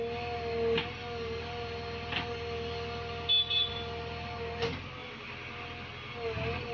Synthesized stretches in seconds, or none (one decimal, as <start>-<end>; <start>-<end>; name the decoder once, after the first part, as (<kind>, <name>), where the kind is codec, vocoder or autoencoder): none